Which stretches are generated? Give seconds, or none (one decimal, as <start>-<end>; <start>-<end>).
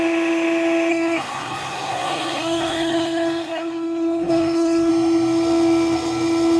0.9-4.9